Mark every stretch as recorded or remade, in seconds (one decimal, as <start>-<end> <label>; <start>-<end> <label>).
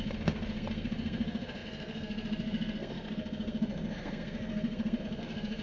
0.0-5.6 remade